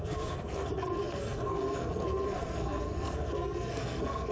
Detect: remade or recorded remade